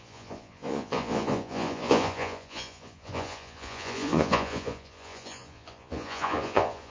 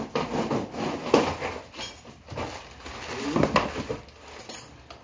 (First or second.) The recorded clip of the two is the second